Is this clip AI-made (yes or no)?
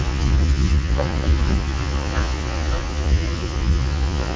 yes